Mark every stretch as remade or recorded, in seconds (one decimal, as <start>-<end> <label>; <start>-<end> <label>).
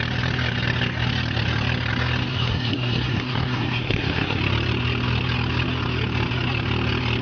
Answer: 0.0-2.3 recorded; 2.3-4.4 remade; 4.4-7.2 recorded